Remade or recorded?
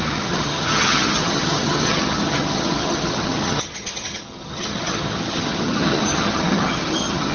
remade